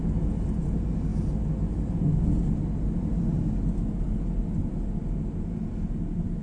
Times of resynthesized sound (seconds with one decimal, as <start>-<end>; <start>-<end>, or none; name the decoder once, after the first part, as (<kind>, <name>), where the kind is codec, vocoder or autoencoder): none